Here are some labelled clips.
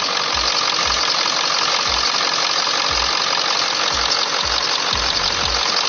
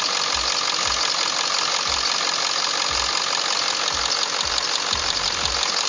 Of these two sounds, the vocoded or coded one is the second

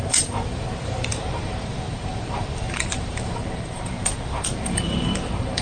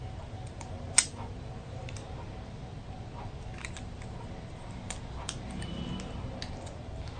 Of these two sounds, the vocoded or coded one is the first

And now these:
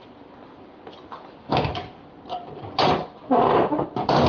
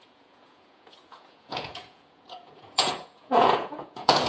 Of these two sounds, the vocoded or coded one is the second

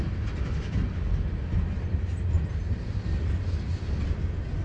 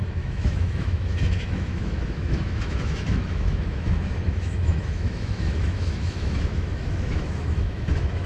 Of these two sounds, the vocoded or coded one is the second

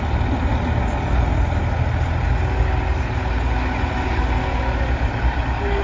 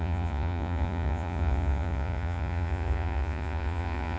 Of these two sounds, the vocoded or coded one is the second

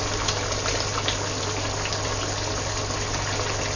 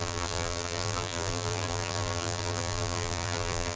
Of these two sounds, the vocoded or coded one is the second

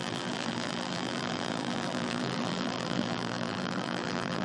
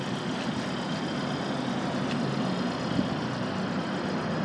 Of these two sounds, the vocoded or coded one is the first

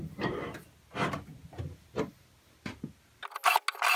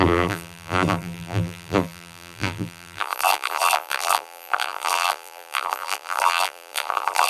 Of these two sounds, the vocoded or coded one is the second